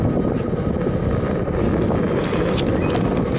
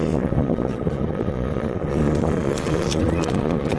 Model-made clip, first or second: second